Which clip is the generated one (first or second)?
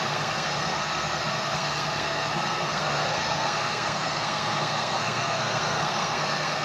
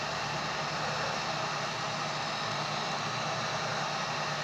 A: first